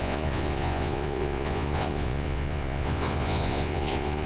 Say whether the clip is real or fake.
fake